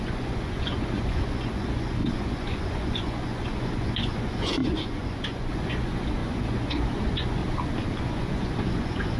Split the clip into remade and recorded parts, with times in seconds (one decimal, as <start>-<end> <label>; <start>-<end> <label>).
0.0-7.4 remade; 7.4-8.1 recorded; 8.1-9.2 remade